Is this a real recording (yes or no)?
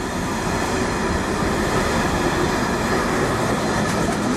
yes